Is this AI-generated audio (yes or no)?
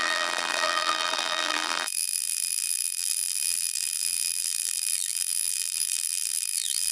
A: yes